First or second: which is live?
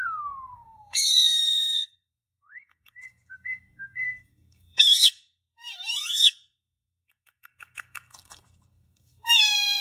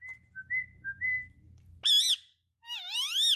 second